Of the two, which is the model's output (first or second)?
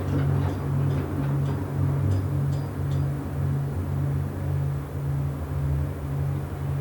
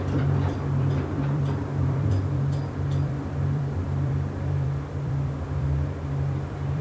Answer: second